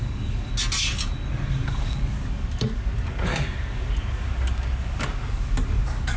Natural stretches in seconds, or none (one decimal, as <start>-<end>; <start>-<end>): 0.5-1.5